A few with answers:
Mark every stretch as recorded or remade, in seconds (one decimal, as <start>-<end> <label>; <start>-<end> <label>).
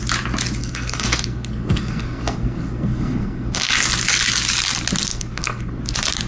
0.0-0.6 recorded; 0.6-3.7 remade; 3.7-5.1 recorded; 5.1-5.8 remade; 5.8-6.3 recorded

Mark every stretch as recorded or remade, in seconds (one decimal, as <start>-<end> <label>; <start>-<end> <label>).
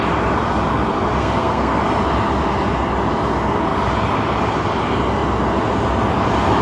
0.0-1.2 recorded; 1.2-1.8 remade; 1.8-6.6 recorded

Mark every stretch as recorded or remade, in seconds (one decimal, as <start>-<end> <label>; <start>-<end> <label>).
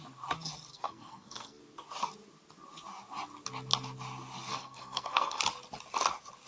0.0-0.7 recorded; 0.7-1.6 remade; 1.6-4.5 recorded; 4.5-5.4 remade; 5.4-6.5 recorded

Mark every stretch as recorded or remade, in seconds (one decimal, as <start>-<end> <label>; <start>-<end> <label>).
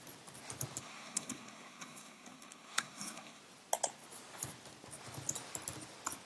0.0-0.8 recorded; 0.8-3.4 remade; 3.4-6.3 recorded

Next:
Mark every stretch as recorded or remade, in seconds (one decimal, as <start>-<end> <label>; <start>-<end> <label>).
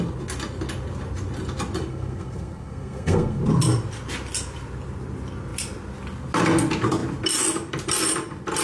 0.0-1.9 recorded; 1.9-3.4 remade; 3.4-8.6 recorded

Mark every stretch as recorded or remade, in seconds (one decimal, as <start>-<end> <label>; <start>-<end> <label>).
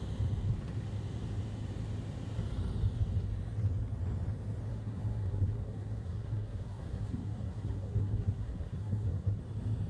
0.0-4.7 recorded; 4.7-9.4 remade; 9.4-9.9 recorded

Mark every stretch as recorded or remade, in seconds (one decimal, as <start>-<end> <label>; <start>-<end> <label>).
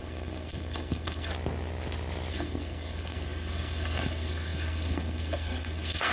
0.0-1.3 remade; 1.3-2.3 recorded; 2.3-6.1 remade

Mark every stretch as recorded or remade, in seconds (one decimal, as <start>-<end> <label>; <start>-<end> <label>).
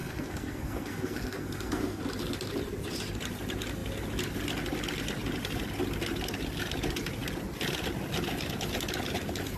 0.0-2.0 remade; 2.0-9.6 recorded